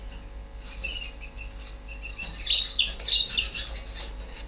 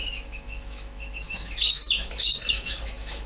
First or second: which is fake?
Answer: second